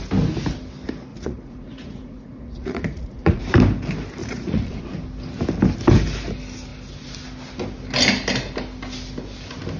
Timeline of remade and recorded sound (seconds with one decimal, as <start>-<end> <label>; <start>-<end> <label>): 0.0-1.1 recorded; 1.1-3.4 remade; 3.4-4.2 recorded; 4.2-4.8 remade; 4.8-9.8 recorded